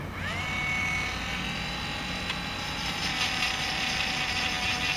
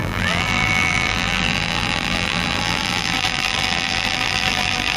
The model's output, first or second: second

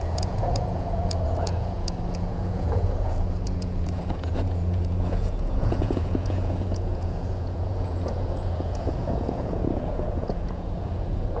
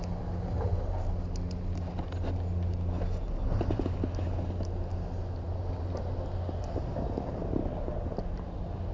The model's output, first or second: first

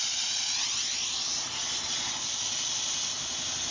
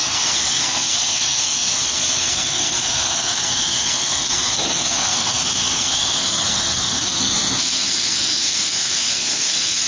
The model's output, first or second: second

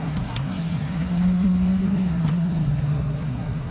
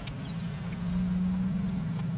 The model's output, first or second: first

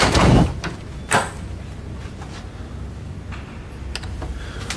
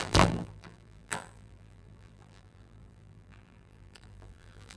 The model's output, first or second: second